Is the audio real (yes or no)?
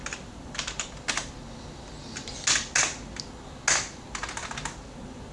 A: yes